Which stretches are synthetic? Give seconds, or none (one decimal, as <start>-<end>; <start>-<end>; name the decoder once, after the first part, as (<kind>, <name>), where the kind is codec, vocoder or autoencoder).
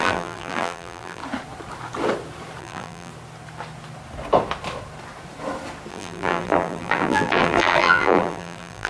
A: 0.0-1.2 (vocoder, BigVGAN v2); 2.6-3.1; 5.9-8.9